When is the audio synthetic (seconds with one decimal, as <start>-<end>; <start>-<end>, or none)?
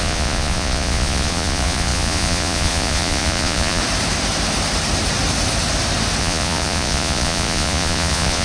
0.0-3.8; 6.2-8.4